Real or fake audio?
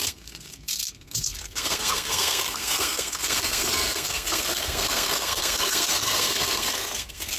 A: fake